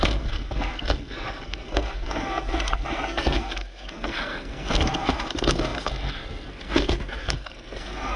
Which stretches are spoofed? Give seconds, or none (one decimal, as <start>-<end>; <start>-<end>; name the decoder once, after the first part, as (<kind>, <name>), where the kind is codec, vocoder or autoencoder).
0.0-8.2 (codec, SNAC)